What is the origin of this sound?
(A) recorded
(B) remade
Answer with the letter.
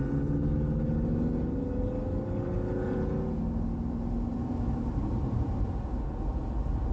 A